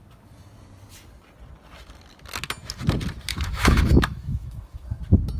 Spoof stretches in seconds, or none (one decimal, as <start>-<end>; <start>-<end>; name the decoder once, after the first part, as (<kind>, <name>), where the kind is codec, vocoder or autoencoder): 3.3-5.0 (autoencoder, DAC-VAE)